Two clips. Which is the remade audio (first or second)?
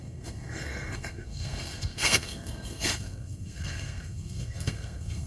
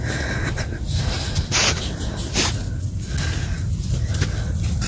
first